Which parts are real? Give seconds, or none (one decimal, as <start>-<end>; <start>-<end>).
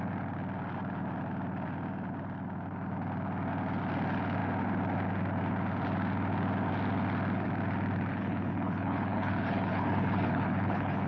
0.0-8.1